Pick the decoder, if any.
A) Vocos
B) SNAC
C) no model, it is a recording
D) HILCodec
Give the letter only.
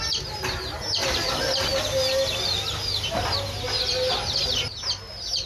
C